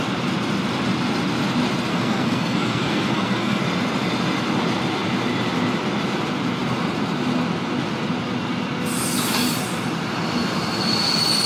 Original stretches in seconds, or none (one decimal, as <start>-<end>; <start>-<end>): 0.0-1.9; 3.6-11.5